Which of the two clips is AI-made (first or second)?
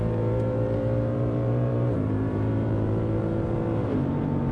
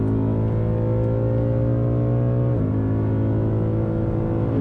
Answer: first